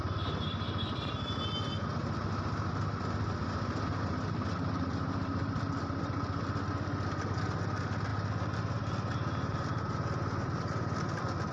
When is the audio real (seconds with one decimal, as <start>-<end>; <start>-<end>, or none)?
0.0-11.5